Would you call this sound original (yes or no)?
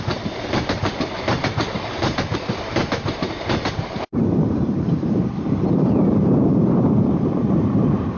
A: no